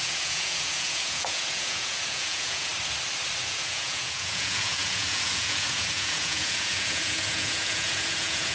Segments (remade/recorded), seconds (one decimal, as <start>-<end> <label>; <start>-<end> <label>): 0.0-2.7 remade; 2.7-3.4 recorded; 3.4-8.5 remade